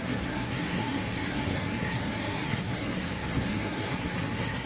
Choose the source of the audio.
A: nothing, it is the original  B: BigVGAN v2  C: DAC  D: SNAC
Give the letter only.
D